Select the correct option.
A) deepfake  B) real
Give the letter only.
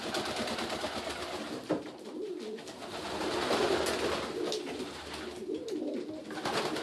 B